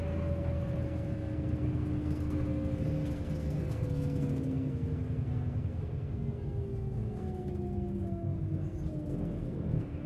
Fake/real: fake